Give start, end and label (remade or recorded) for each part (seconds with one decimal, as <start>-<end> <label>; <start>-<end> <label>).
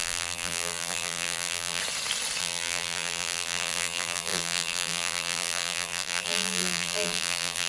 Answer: 0.0-1.8 remade; 1.8-2.4 recorded; 2.4-7.7 remade